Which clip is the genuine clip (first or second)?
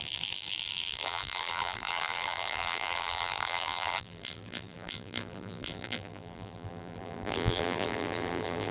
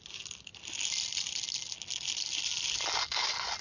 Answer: second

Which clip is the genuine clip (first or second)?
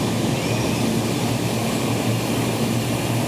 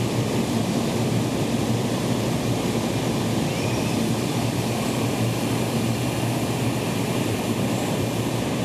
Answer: first